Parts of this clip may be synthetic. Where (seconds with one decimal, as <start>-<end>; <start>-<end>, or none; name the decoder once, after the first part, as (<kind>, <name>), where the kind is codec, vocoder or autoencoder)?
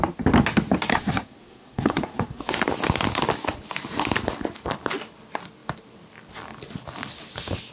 0.9-2.4 (codec, SNAC)